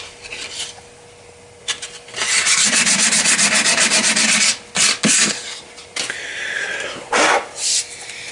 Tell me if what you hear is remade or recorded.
recorded